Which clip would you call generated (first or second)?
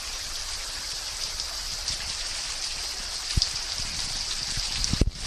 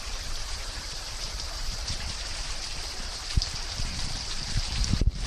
second